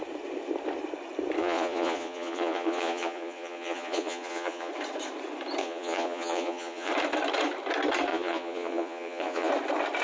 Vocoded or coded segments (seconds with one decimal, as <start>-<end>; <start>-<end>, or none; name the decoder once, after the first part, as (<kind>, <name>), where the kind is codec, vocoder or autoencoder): 1.4-4.7 (vocoder, Vocos); 5.6-6.9; 8.1-9.5

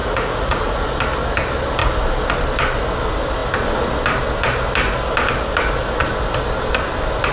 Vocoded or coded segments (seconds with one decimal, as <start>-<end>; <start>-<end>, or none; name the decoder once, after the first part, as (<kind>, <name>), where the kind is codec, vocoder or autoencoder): 0.0-0.8 (vocoder, Vocos)

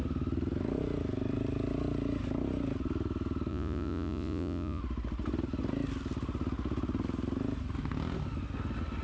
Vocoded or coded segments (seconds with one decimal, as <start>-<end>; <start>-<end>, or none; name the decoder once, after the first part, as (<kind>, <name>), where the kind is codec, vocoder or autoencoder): 3.5-4.8 (vocoder, Vocos)

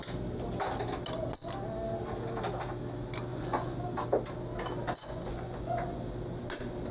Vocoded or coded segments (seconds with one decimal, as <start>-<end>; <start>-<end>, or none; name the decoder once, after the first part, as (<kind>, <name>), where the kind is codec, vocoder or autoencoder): 3.3-3.8 (vocoder, Vocos); 4.8-6.0

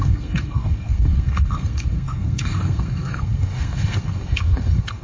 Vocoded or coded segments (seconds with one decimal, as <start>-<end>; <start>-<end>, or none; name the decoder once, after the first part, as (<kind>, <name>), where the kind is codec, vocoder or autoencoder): 0.0-5.0 (codec, SNAC)

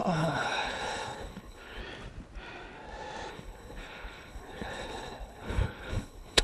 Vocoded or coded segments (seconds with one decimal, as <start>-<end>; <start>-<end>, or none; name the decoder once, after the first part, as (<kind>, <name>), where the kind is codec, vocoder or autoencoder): 0.0-1.8 (codec, HILCodec); 3.3-6.4

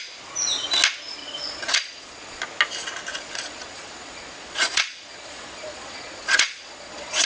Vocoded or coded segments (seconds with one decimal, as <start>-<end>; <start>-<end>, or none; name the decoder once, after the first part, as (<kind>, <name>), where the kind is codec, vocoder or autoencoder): 1.2-2.4 (vocoder, Vocos); 3.1-7.3